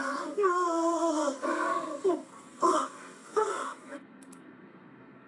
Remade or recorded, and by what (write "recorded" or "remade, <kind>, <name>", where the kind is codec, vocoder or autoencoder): remade, codec, SNAC